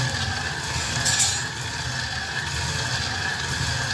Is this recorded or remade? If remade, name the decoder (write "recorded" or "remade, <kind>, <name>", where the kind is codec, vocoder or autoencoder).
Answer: recorded